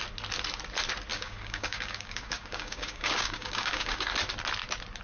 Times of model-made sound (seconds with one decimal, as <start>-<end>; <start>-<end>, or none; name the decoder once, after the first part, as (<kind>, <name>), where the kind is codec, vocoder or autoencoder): 1.1-4.1 (codec, DAC)